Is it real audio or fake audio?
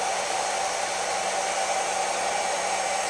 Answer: fake